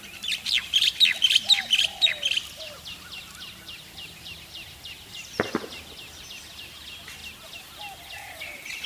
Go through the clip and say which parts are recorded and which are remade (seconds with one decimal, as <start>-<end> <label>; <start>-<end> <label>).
0.0-8.9 recorded